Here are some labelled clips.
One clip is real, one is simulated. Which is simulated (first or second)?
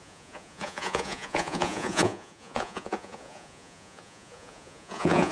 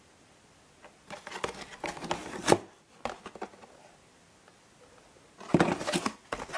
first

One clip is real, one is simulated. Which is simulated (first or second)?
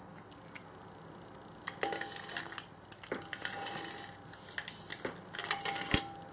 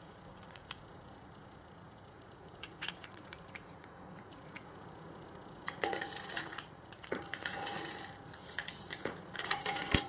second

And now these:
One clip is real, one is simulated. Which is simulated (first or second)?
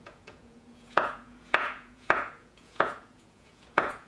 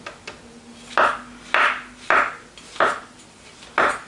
first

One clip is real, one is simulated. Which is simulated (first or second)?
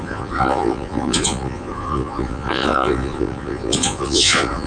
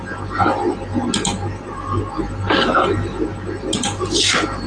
first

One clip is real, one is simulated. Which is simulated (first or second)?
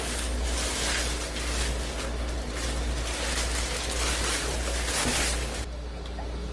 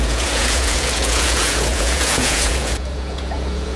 second